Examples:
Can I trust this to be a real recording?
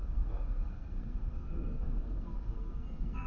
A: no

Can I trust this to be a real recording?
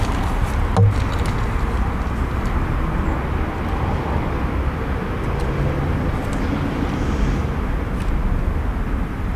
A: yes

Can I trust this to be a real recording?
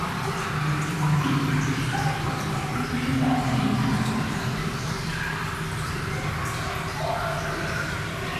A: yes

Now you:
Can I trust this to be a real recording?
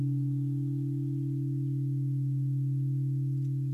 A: yes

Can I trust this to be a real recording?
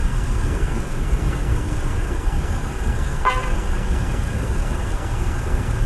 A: no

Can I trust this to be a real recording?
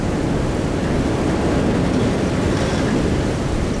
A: yes